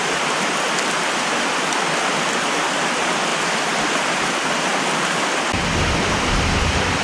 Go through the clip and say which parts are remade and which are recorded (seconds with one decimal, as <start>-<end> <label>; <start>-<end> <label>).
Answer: 0.0-7.0 recorded